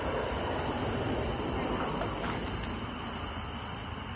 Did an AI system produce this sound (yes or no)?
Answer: yes